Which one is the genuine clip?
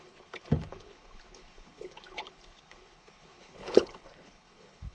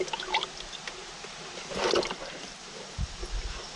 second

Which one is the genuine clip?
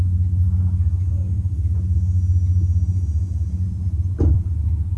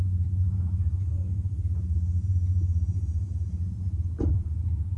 first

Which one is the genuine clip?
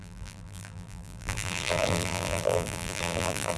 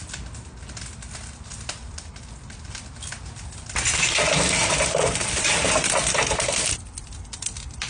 second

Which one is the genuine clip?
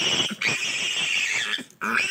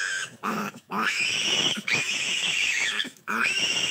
first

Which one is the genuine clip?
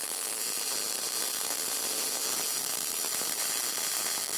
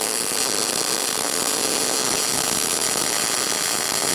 second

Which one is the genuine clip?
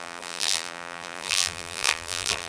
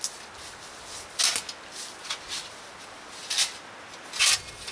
second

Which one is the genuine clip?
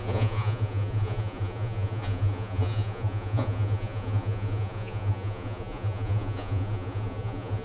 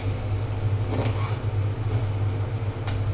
second